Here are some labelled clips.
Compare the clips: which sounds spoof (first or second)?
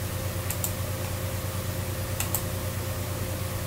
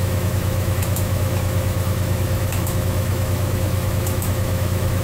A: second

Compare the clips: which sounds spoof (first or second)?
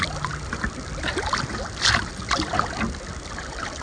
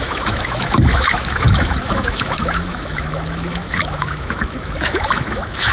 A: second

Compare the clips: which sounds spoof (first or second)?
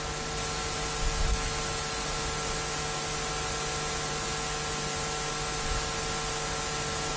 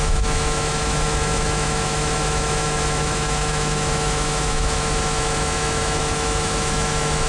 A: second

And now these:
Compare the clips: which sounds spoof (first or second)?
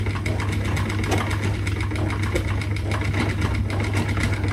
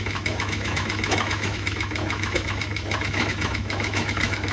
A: second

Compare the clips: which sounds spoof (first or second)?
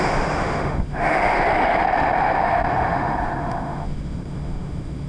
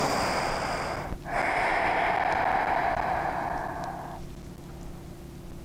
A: first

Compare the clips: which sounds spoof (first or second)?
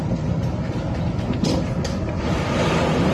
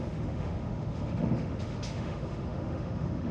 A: second